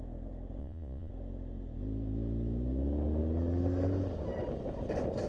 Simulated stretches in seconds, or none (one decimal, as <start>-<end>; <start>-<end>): 0.6-1.1